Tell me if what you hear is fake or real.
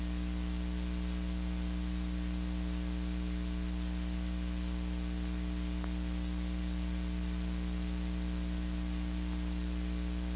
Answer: real